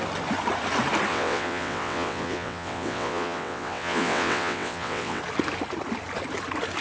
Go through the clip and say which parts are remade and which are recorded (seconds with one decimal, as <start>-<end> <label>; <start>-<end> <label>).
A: 0.0-1.1 recorded; 1.1-5.2 remade; 5.2-6.8 recorded